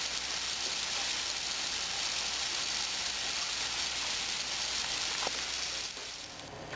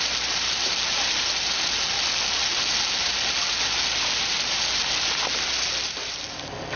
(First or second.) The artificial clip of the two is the second